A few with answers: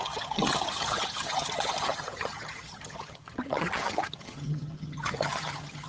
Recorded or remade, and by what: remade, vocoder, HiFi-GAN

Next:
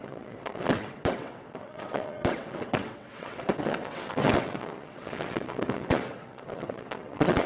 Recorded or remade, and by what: remade, vocoder, WaveNeXt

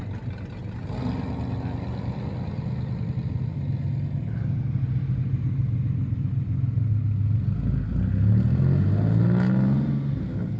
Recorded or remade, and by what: recorded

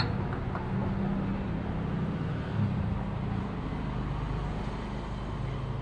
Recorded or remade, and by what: recorded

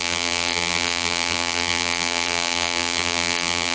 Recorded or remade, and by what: remade, vocoder, BigVGAN v2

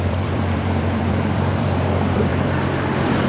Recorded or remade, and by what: remade, vocoder, BigVGAN v2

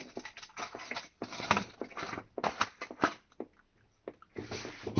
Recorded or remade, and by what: recorded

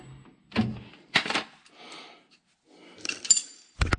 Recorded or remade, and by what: recorded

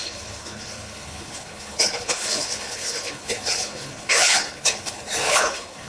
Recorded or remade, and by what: remade, codec, HILCodec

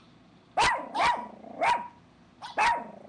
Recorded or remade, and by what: recorded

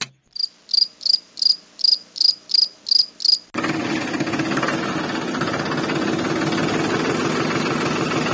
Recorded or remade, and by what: recorded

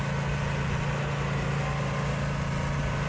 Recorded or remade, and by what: recorded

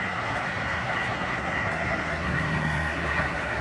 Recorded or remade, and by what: remade, codec, SNAC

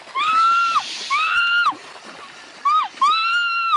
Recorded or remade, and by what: recorded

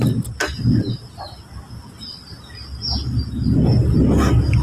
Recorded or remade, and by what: recorded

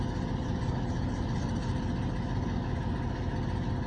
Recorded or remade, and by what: recorded